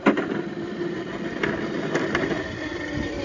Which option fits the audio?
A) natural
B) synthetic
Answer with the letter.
A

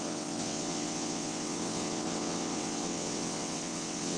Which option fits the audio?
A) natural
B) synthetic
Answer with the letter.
B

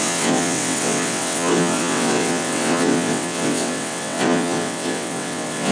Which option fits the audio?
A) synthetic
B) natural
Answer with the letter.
A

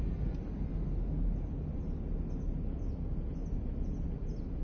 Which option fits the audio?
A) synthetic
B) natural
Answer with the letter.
B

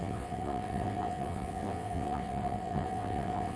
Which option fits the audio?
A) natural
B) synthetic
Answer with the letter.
B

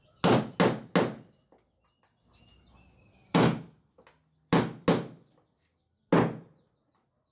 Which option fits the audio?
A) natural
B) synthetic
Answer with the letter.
A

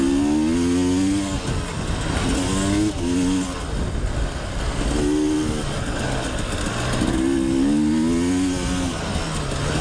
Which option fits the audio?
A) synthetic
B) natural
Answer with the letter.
B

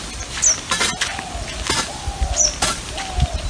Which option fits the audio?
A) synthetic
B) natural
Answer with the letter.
B